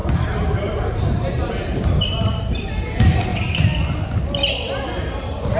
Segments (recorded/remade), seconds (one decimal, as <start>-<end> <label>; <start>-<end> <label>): 0.0-3.3 remade; 3.3-5.1 recorded; 5.1-5.6 remade